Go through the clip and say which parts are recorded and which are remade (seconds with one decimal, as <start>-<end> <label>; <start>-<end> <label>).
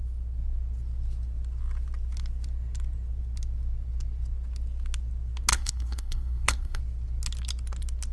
0.0-5.5 recorded; 5.5-6.8 remade; 6.8-8.1 recorded